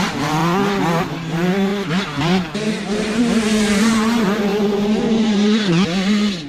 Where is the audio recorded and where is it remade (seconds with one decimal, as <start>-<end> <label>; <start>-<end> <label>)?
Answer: 0.0-0.4 remade; 0.4-1.0 recorded; 1.0-4.5 remade; 4.5-5.0 recorded; 5.0-6.5 remade